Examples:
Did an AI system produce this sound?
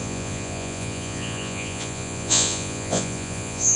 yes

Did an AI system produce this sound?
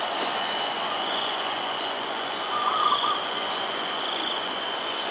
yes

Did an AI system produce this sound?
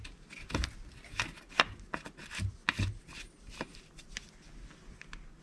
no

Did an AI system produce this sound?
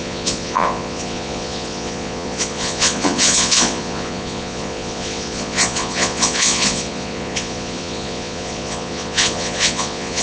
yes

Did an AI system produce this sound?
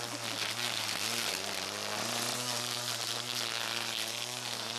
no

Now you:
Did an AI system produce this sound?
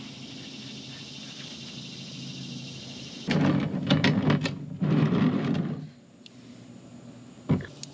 no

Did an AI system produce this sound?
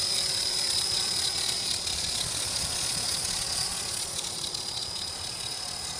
yes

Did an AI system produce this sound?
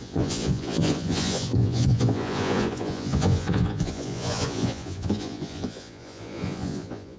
yes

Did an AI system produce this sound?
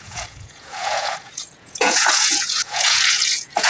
yes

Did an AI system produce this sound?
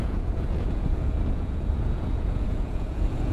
yes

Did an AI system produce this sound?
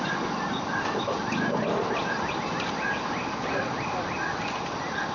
no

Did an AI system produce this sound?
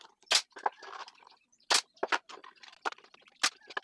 no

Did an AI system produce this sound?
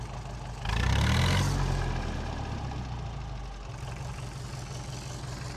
no